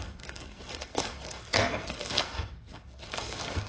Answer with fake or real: fake